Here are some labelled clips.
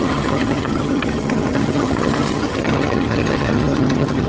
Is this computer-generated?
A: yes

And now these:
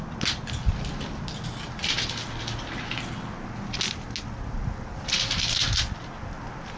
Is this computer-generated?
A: no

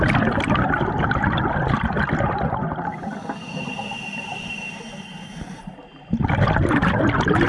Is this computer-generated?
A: no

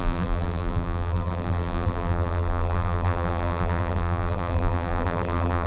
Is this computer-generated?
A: yes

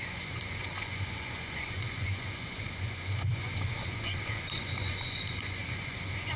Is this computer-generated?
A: yes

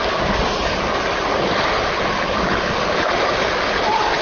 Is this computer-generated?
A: yes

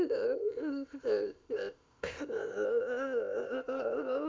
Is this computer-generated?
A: yes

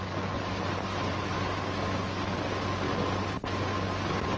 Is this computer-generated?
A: no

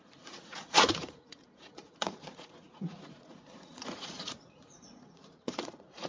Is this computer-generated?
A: yes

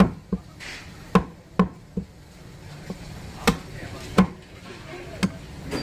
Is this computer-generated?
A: no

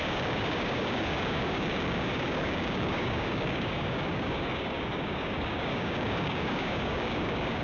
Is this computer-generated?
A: yes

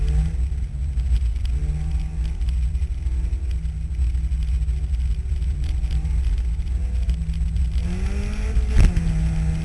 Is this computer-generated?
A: no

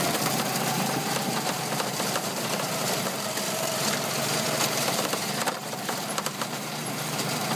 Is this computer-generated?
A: yes